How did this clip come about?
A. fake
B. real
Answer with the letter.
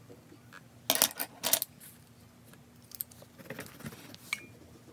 B